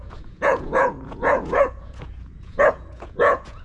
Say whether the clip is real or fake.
fake